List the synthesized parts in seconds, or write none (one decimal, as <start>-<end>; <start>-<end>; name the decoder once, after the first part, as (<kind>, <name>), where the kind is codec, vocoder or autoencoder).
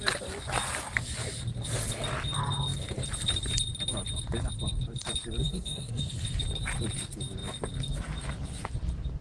5.4-6.0 (codec, SNAC)